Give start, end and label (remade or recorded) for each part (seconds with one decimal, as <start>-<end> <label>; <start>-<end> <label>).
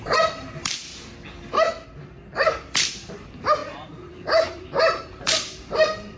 0.0-0.9 remade; 0.9-2.9 recorded; 2.9-6.2 remade